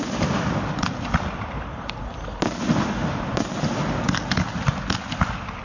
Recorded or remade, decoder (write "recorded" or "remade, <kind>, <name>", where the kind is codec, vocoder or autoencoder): recorded